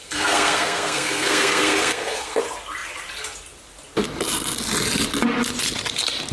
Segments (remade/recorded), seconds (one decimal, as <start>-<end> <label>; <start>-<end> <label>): 0.0-2.4 remade; 2.4-6.3 recorded